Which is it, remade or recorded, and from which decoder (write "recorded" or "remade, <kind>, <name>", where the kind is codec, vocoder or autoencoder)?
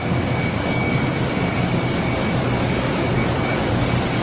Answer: remade, codec, DAC